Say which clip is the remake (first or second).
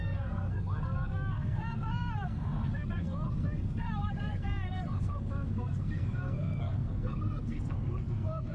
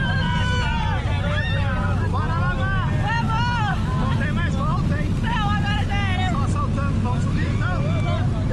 first